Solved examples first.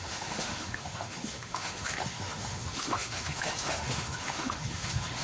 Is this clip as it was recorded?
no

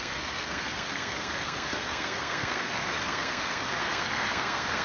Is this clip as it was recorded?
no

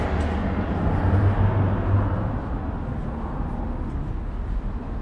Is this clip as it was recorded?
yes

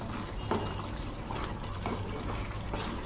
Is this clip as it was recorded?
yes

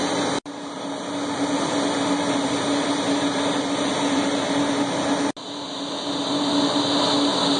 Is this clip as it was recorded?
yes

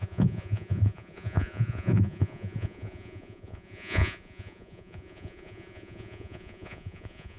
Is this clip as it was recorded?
no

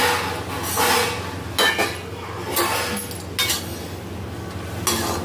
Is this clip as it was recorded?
yes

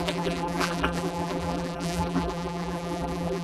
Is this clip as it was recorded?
no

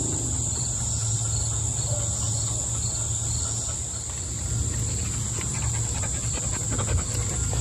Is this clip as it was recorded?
yes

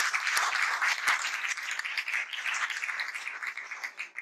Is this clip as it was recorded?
yes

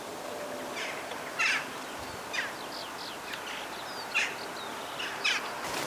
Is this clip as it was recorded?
yes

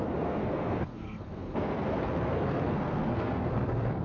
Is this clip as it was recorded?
no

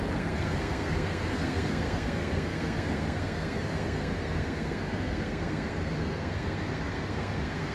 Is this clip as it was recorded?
no